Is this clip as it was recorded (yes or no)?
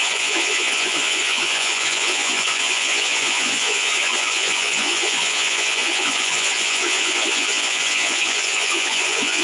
no